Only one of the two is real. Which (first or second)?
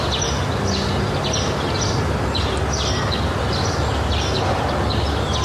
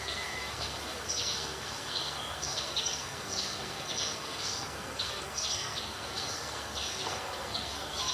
first